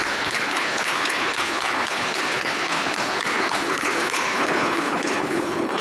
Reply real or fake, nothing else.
fake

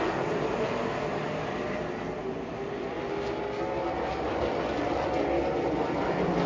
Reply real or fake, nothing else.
real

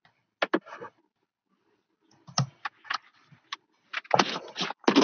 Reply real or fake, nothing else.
real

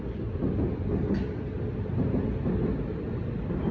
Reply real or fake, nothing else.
real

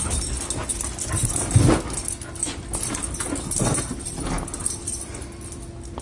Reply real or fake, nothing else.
real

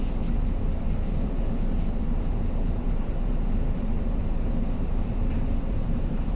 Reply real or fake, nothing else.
fake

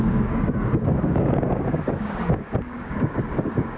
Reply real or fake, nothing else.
fake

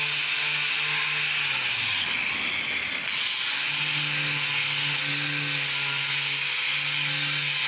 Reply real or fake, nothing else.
real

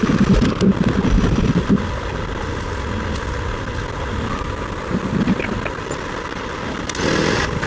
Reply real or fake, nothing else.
real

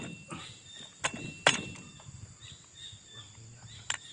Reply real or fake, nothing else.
real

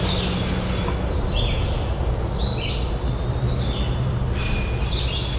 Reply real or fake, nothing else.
real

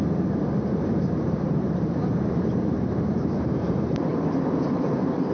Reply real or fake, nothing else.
fake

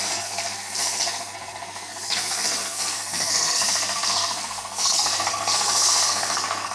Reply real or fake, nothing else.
fake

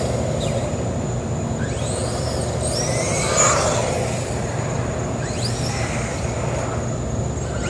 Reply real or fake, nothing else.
real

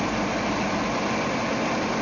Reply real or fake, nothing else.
real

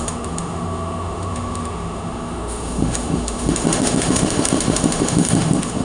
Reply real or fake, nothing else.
fake